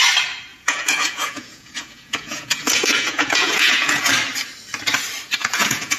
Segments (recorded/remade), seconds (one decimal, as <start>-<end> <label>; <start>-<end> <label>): 0.0-0.5 recorded; 0.5-4.1 remade; 4.1-5.4 recorded; 5.4-6.0 remade

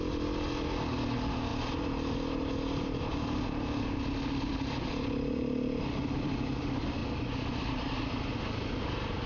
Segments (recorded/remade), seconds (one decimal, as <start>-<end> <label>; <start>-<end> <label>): 0.0-9.3 recorded

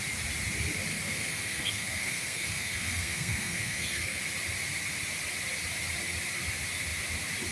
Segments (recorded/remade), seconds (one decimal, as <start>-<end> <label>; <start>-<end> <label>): 0.0-0.9 recorded; 0.9-4.2 remade; 4.2-7.5 recorded

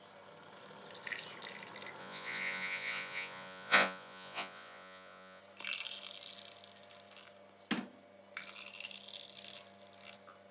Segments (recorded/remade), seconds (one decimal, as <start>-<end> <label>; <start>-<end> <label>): 0.0-2.0 recorded; 2.0-5.4 remade; 5.4-10.5 recorded

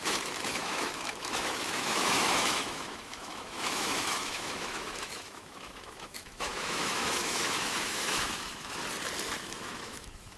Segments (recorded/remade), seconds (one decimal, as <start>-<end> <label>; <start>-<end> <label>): 0.0-8.8 remade; 8.8-9.4 recorded; 9.4-10.4 remade

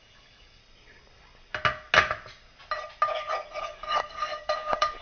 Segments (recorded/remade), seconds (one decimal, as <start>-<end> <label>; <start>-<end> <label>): 0.0-0.6 remade; 0.6-3.6 recorded; 3.6-5.0 remade